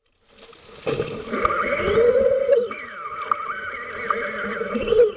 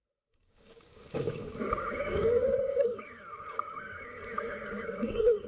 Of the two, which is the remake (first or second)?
second